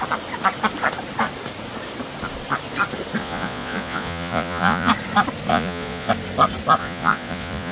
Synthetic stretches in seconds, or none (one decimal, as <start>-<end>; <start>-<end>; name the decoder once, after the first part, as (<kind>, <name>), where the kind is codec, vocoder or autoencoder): 3.2-4.9 (vocoder, Vocos); 5.5-6.1; 6.8-7.7